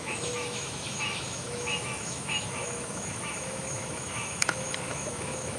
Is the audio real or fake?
fake